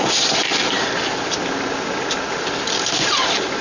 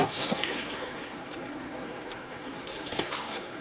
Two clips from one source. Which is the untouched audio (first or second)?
first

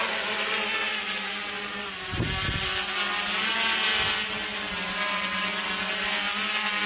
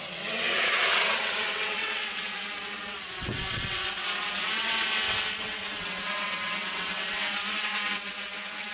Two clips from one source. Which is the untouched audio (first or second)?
first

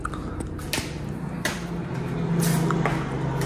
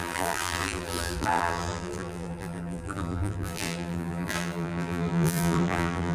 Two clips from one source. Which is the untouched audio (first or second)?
first